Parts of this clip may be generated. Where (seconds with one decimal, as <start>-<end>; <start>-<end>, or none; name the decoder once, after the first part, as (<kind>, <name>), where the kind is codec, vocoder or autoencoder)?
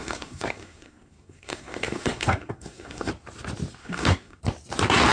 0.0-3.1 (codec, SNAC); 3.8-4.4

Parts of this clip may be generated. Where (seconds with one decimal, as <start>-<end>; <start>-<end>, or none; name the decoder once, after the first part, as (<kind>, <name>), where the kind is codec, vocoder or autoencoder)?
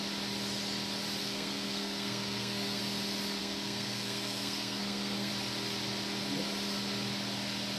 1.2-2.8 (codec, SNAC); 3.4-5.3